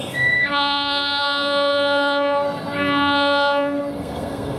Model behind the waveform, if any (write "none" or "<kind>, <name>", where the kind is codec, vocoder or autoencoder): codec, SNAC